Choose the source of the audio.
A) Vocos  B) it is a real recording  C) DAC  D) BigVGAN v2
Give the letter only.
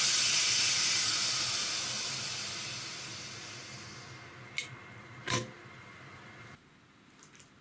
B